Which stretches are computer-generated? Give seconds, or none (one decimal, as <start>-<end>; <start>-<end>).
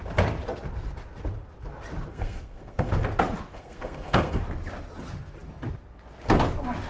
2.1-2.9; 3.5-4.4